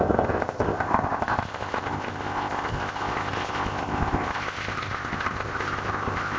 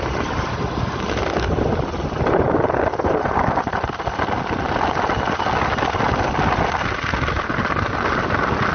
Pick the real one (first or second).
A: second